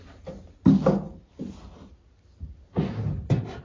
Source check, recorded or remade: recorded